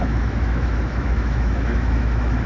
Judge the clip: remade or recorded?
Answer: remade